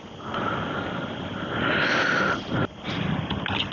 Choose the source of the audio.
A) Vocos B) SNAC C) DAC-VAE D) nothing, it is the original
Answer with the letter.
D